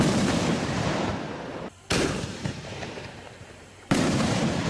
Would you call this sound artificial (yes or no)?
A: yes